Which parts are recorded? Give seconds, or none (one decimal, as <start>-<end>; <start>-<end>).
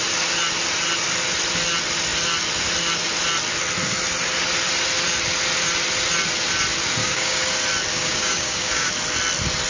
0.0-7.0; 7.5-7.9; 8.9-9.7